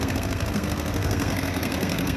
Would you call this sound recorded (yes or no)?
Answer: no